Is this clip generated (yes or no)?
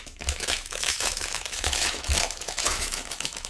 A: yes